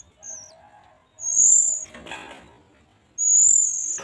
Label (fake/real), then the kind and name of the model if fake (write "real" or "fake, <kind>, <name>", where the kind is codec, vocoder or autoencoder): real